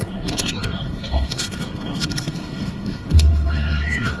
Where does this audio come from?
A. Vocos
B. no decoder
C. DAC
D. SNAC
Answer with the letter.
D